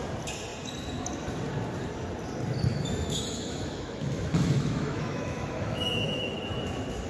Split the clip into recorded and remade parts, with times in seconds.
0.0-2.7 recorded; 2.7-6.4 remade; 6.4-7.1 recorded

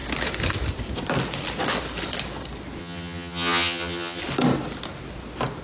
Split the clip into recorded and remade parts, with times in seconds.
0.0-2.8 recorded; 2.8-4.2 remade; 4.2-5.6 recorded

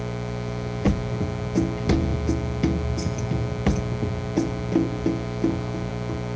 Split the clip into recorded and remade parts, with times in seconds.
0.0-6.4 recorded

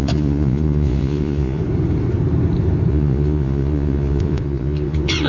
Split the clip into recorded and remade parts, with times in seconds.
0.0-1.6 remade; 1.6-2.9 recorded; 2.9-5.3 remade

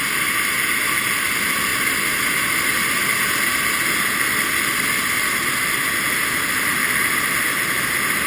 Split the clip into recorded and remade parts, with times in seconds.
0.0-8.3 recorded

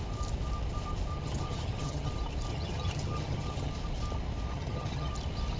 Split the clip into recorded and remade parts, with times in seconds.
0.0-1.2 recorded; 1.2-2.1 remade; 2.1-2.5 recorded; 2.5-3.7 remade; 3.7-4.5 recorded; 4.5-5.1 remade; 5.1-5.6 recorded

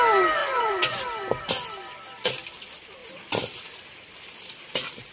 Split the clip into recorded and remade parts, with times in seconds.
0.0-0.4 recorded; 0.4-1.0 remade; 1.0-5.1 recorded